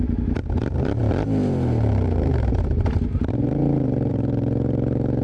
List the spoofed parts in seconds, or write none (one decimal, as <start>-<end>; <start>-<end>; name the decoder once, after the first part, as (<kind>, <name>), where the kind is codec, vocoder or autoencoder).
0.0-5.2 (vocoder, BigVGAN v2)